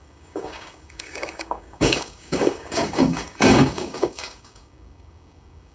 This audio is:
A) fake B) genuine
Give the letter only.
A